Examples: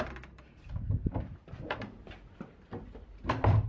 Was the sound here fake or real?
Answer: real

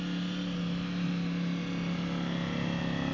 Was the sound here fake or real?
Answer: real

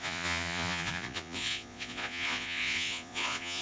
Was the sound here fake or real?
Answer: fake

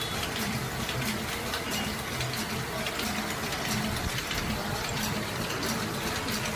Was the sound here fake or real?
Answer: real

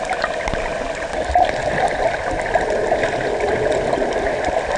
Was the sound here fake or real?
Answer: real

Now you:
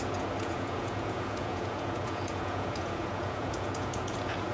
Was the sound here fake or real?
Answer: fake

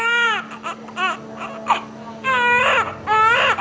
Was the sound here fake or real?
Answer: real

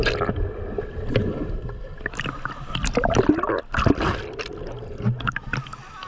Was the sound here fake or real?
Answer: real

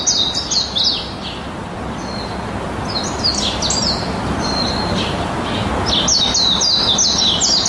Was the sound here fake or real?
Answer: real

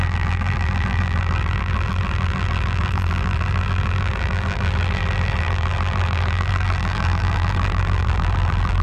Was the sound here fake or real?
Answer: fake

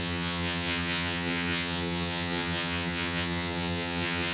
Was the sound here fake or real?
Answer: fake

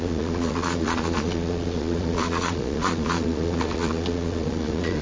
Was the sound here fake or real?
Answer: fake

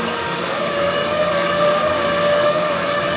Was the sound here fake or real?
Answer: fake